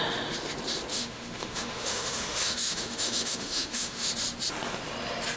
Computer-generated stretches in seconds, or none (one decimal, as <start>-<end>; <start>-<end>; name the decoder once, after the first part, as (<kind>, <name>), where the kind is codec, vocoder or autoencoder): 0.9-4.1 (autoencoder, DAC-VAE)